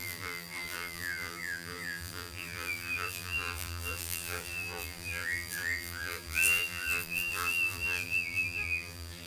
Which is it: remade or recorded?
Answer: remade